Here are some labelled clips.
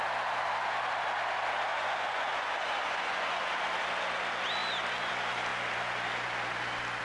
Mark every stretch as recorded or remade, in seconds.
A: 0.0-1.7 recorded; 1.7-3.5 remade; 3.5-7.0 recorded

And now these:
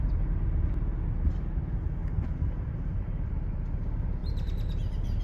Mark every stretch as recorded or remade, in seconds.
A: 0.0-2.0 recorded; 2.0-3.6 remade; 3.6-4.2 recorded; 4.2-5.2 remade

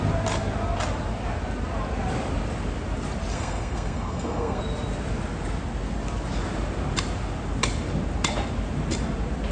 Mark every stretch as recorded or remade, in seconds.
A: 0.0-3.3 recorded; 3.3-4.6 remade; 4.6-9.5 recorded

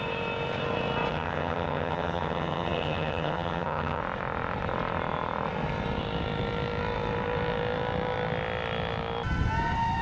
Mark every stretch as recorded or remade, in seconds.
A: 0.0-1.1 recorded; 1.1-4.0 remade; 4.0-10.0 recorded

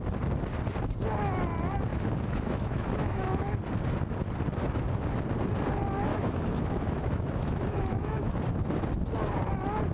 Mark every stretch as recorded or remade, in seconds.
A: 0.0-1.9 recorded; 1.9-3.5 remade; 3.5-6.1 recorded; 6.1-8.4 remade; 8.4-9.9 recorded

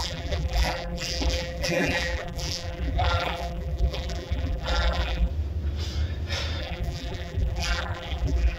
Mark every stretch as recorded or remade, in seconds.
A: 0.0-5.3 remade; 5.3-6.6 recorded; 6.6-8.6 remade

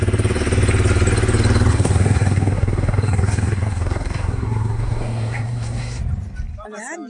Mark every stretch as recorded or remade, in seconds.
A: 0.0-1.7 recorded; 1.7-6.0 remade; 6.0-7.1 recorded